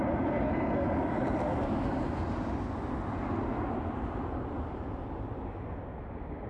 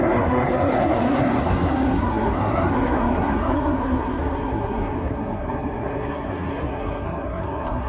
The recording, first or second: first